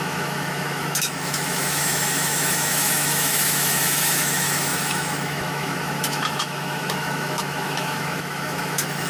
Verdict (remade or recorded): remade